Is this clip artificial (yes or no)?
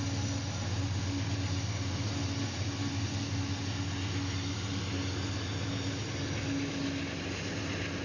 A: no